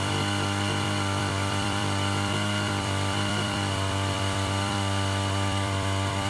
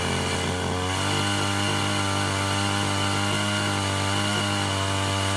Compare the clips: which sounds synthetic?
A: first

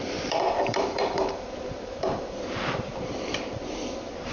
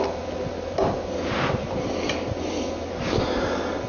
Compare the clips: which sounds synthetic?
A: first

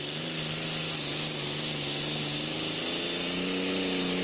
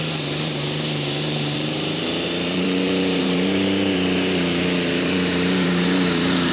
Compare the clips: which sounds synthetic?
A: second